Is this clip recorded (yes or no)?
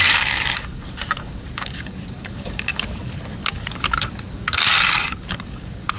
no